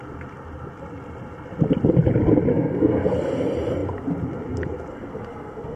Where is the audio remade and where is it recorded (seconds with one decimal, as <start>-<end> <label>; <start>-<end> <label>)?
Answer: 0.0-2.5 recorded; 2.5-3.1 remade; 3.1-4.9 recorded; 4.9-5.8 remade